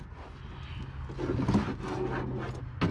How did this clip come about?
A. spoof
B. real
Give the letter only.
B